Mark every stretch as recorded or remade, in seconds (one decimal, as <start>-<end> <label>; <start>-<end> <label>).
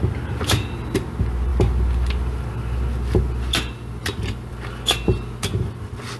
0.0-6.2 recorded